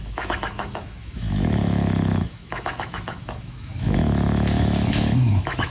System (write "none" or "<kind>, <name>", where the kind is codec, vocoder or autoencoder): autoencoder, DAC-VAE